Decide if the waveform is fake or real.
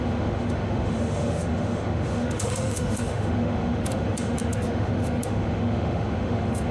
fake